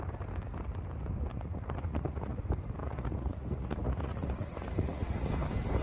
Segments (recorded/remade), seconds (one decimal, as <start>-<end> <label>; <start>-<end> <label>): 0.0-1.3 recorded; 1.3-2.4 remade; 2.4-2.8 recorded; 2.8-5.3 remade; 5.3-5.8 recorded